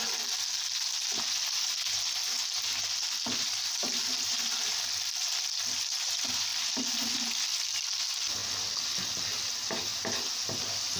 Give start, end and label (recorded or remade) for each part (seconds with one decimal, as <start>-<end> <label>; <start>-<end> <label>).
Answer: 0.0-11.0 recorded